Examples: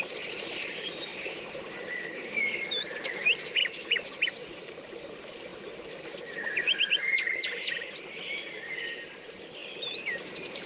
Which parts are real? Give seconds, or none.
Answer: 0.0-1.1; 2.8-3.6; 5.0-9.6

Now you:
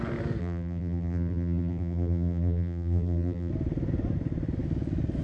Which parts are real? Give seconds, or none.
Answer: 0.0-0.4; 3.5-5.2

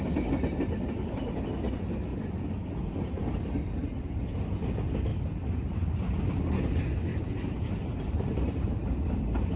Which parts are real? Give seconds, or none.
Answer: 0.0-5.1; 6.4-7.1; 9.0-9.6

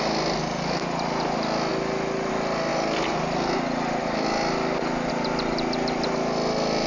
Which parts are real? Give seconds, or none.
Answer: 0.0-6.9